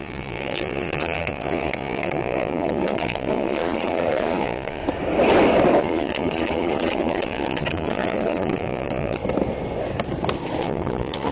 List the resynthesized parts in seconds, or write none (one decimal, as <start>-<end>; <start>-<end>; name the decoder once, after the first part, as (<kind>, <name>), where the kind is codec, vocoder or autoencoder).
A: 0.0-4.8 (vocoder, Vocos); 5.8-9.2; 10.6-11.3

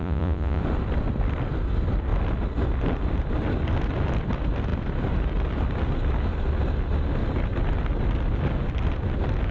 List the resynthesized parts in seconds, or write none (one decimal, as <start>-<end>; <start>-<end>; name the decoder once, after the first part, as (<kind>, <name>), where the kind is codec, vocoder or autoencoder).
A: 0.0-0.6 (vocoder, Vocos)

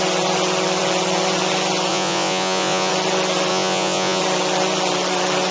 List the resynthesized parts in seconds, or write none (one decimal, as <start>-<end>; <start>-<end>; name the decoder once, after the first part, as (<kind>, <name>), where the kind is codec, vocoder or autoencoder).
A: 1.9-2.9 (vocoder, Vocos); 3.5-4.2

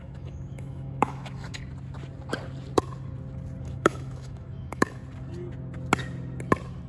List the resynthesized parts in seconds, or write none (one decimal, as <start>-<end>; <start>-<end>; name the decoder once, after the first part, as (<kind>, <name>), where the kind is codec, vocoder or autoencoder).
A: 0.0-1.6 (autoencoder, DAC-VAE); 3.6-5.0

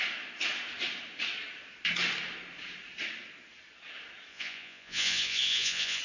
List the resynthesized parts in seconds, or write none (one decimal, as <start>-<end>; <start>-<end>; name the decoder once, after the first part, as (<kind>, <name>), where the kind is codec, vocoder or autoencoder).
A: 4.3-6.0 (vocoder, Vocos)

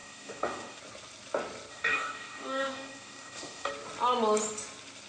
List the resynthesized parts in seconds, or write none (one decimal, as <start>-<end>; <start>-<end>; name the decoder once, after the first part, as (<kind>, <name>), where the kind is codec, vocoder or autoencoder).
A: 0.0-0.8 (codec, DAC); 1.7-3.7